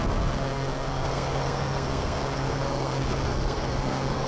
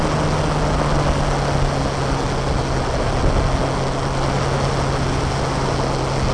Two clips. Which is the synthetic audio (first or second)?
first